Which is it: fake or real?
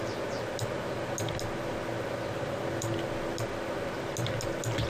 real